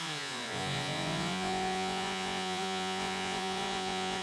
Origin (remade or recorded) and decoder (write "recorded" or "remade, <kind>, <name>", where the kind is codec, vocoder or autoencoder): remade, vocoder, Vocos